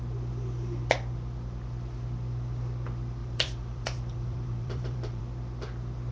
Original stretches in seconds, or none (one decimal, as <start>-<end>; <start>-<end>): 0.0-3.2; 5.2-6.1

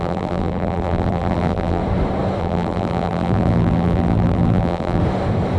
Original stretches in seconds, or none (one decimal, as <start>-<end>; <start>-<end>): 1.8-2.4; 5.0-5.6

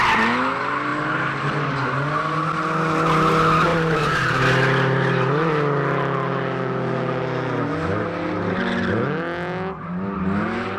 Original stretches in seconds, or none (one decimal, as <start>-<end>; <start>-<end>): 0.0-3.7; 4.4-10.8

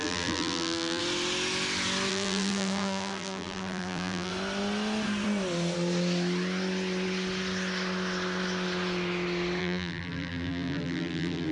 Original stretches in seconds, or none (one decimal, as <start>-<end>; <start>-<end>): 1.0-2.1; 4.3-9.6

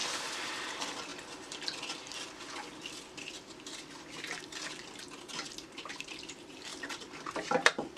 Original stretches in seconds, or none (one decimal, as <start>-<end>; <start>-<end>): 0.0-0.7; 1.1-5.9

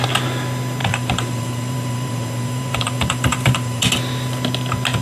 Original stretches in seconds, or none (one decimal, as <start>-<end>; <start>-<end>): 0.0-0.8; 3.8-5.0